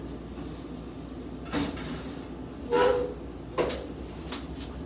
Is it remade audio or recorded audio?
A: recorded